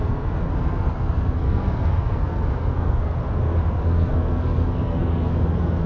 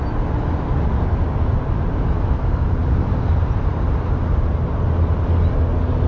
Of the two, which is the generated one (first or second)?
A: first